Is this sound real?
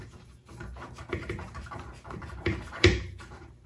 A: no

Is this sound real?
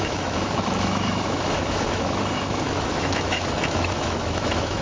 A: no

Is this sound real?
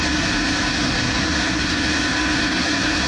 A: no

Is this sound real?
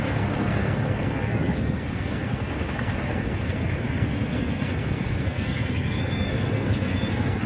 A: no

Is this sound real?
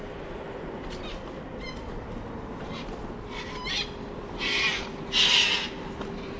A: yes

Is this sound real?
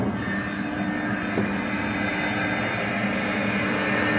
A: yes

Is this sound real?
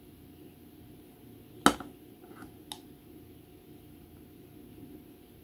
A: yes